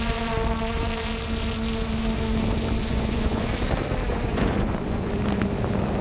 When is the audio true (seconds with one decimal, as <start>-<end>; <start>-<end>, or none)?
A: 0.0-2.8; 3.5-4.1; 5.1-6.0